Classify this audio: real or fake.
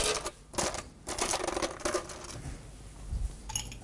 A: real